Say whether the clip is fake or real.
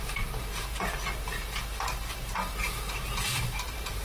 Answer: fake